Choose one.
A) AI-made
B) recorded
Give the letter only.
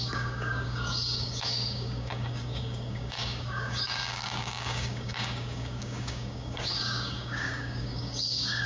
A